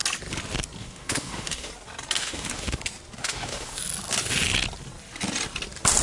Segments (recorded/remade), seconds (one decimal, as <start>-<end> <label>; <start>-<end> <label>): 0.0-0.8 recorded; 0.8-1.7 remade; 1.7-2.2 recorded; 2.2-2.8 remade; 2.8-3.2 recorded; 3.2-3.8 remade; 3.8-6.0 recorded